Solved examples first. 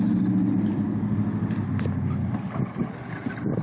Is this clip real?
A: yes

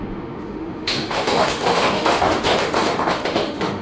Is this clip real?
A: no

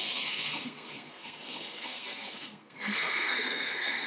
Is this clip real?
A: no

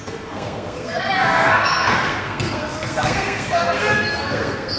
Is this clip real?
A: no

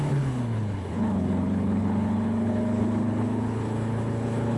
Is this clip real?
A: no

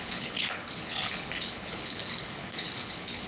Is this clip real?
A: no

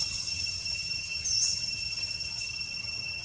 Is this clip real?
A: no